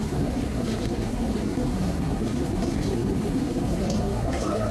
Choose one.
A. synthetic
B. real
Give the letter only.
A